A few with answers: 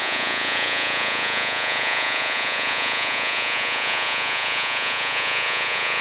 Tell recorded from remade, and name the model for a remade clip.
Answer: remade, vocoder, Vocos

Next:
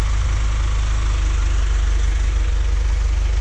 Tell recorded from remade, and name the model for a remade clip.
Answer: recorded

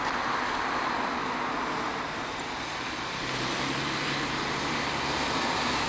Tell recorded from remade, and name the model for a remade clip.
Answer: recorded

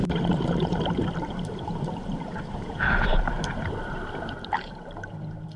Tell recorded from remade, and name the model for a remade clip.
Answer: remade, vocoder, BigVGAN v2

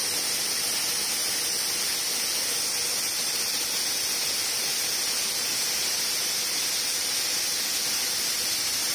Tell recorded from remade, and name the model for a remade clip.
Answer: recorded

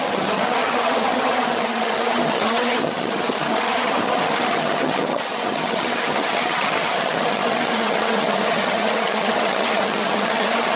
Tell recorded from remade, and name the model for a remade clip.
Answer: remade, vocoder, HiFi-GAN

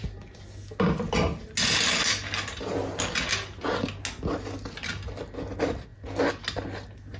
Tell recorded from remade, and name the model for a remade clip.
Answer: recorded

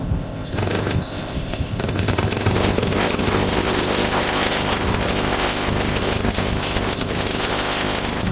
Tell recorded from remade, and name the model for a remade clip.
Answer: remade, codec, ZipCodec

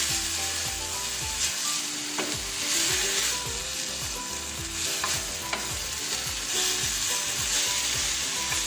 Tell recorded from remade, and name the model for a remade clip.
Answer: recorded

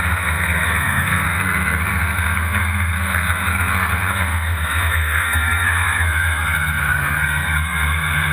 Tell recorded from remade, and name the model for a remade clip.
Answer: remade, codec, SNAC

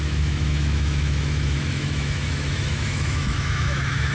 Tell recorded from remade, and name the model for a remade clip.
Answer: remade, autoencoder, DAC-VAE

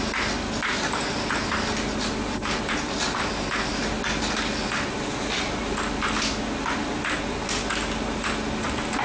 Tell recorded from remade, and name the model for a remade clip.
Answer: recorded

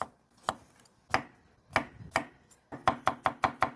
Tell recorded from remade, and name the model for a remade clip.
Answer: recorded